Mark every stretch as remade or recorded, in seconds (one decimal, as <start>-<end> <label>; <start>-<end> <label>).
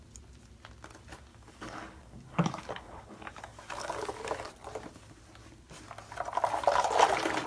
0.0-1.3 recorded; 1.3-4.5 remade; 4.5-7.5 recorded